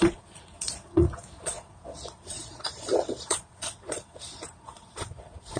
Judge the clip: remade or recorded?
remade